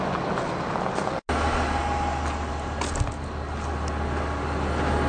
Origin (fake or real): real